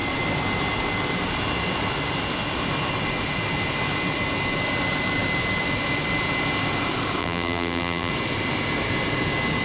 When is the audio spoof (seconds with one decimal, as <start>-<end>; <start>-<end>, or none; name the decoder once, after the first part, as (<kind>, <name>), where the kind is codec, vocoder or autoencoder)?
7.2-8.1 (vocoder, BigVGAN v2)